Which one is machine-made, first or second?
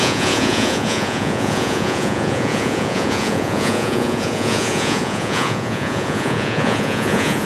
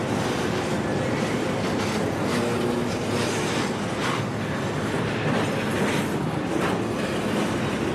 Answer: first